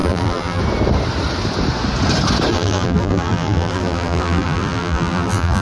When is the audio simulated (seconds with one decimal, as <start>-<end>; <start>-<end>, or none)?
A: 0.0-0.6; 2.5-5.6